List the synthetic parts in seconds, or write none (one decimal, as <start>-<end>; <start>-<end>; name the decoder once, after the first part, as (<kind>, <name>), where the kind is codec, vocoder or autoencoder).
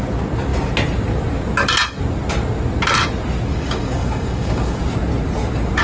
3.5-4.8 (codec, DAC)